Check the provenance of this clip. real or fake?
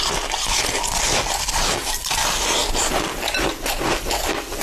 real